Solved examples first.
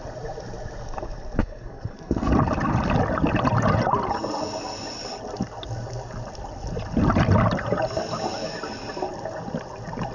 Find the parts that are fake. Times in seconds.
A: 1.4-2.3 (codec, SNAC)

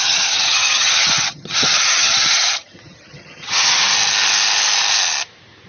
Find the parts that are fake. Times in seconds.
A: 0.0-3.9 (vocoder, HiFi-GAN)

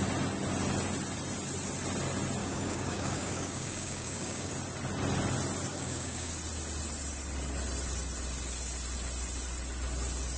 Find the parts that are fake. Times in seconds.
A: 2.4-4.5 (codec, DAC); 5.7-6.3

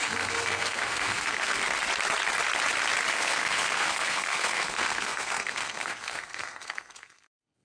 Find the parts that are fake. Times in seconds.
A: 0.0-1.6 (codec, SNAC); 3.1-7.6

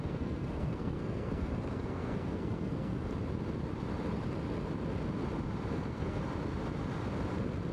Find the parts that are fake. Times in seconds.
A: 0.0-2.9 (codec, SNAC); 5.7-6.2

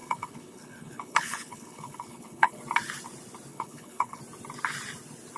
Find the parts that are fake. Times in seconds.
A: 0.0-2.6 (codec, HILCodec); 3.5-4.2

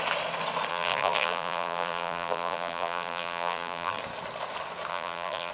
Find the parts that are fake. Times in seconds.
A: 0.7-4.0 (vocoder, BigVGAN v2); 4.9-5.5

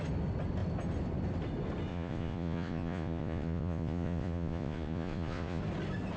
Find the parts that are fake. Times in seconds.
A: 1.9-5.6 (vocoder, Vocos)